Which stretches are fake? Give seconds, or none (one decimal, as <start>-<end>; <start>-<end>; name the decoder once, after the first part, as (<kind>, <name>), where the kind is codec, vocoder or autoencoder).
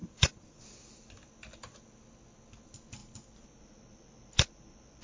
0.0-0.6 (vocoder, Vocos)